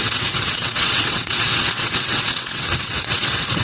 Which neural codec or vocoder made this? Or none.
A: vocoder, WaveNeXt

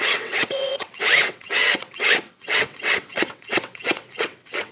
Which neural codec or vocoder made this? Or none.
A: vocoder, WaveNeXt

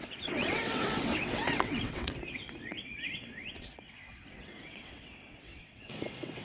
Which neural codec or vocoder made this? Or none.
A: vocoder, WaveNeXt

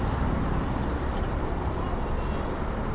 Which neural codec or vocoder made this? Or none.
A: none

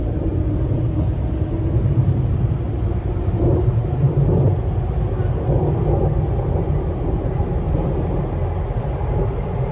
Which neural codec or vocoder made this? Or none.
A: none